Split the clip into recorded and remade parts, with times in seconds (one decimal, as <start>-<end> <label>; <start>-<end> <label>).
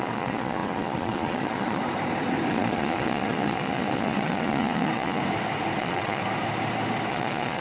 0.0-1.8 remade; 1.8-2.5 recorded; 2.5-5.2 remade; 5.2-5.8 recorded; 5.8-6.2 remade; 6.2-7.1 recorded; 7.1-7.6 remade